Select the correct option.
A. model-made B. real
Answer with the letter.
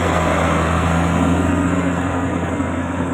A